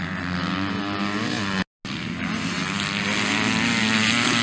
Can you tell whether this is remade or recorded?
recorded